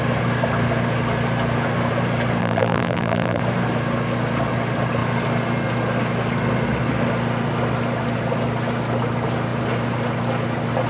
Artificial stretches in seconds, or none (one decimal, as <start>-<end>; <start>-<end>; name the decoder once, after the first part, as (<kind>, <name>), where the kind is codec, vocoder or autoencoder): 2.4-3.4 (vocoder, BigVGAN v2)